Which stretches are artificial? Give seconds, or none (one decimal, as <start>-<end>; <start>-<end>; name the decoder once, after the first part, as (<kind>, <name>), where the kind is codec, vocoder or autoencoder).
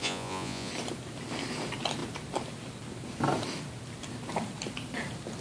0.0-0.7 (vocoder, Vocos)